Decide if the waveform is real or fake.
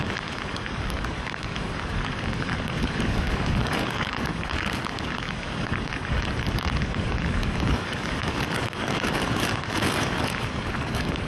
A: fake